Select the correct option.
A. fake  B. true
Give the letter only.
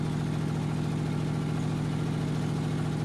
B